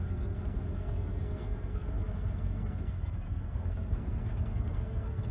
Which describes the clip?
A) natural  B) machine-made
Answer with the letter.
B